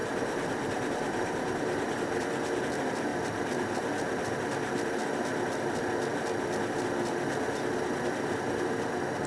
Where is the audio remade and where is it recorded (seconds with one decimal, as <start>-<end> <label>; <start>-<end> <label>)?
0.0-2.2 remade; 2.2-9.3 recorded